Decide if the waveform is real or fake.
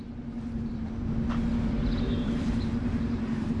fake